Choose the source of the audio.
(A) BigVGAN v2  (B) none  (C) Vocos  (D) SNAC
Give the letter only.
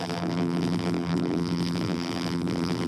A